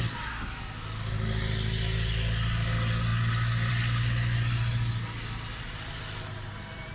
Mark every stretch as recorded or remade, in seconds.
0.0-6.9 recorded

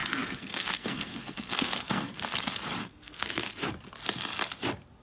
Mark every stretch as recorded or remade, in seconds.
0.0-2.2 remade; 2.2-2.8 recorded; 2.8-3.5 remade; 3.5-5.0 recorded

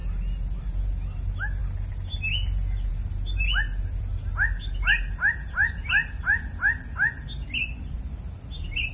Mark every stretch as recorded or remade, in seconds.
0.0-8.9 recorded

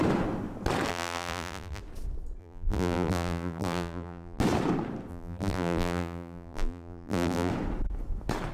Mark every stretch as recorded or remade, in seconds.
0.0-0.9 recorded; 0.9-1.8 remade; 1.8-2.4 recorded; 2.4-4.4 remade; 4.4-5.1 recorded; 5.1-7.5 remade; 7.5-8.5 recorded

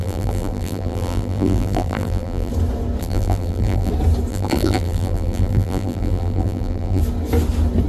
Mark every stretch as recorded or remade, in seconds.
0.0-2.5 remade; 2.5-3.0 recorded; 3.0-3.9 remade; 3.9-4.3 recorded; 4.3-7.0 remade; 7.0-7.9 recorded

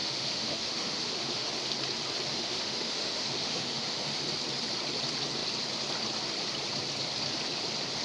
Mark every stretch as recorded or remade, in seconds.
0.0-1.5 remade; 1.5-2.3 recorded; 2.3-4.2 remade; 4.2-8.0 recorded

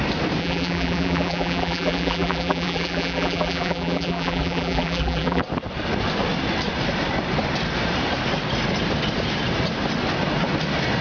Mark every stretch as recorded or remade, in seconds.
0.0-0.4 recorded; 0.4-5.4 remade; 5.4-11.0 recorded